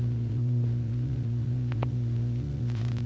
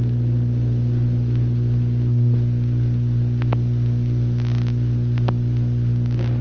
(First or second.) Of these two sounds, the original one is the second